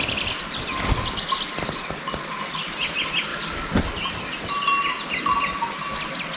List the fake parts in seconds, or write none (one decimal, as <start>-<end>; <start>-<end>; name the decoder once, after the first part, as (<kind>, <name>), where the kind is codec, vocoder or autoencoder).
none